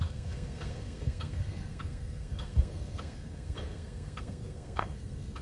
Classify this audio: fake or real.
fake